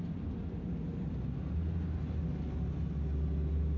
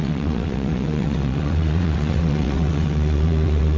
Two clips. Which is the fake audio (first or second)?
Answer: second